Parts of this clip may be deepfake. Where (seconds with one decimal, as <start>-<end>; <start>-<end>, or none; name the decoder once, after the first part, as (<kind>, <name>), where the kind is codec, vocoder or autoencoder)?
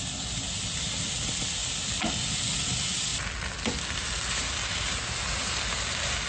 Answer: none